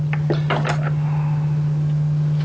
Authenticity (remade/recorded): recorded